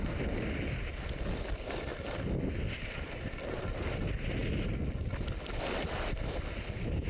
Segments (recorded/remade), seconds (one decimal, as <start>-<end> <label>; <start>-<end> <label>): 0.0-7.1 recorded